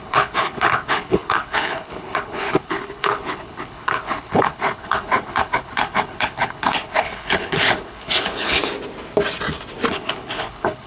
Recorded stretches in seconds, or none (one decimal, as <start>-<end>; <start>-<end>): 8.6-9.9